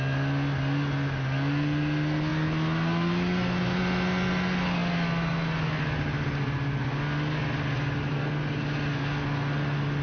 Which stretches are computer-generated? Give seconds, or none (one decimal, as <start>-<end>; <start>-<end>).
none